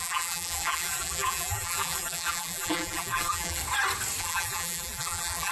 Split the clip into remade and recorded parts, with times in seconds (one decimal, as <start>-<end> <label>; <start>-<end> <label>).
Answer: 0.0-3.6 remade; 3.6-4.2 recorded; 4.2-5.5 remade